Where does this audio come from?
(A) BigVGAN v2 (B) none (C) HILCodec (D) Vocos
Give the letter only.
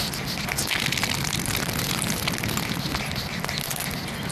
B